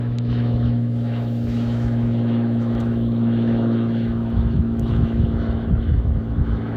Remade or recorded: remade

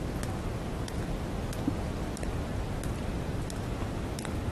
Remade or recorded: recorded